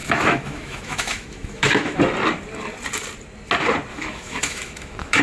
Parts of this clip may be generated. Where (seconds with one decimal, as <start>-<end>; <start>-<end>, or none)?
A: 0.0-2.0; 3.9-5.2